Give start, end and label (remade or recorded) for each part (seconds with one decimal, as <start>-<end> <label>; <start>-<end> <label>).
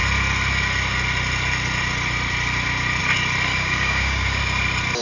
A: 0.0-3.5 recorded; 3.5-4.4 remade; 4.4-5.0 recorded